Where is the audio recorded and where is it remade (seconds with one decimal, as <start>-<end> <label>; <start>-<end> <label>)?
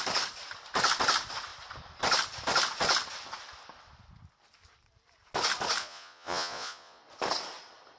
0.0-5.8 recorded; 5.8-7.0 remade; 7.0-8.0 recorded